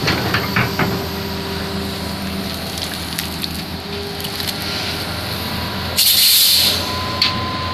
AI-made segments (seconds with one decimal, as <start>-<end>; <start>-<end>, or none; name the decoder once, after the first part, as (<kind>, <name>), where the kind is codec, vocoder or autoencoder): none